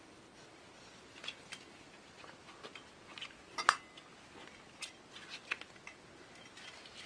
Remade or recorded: recorded